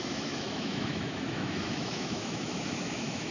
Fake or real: fake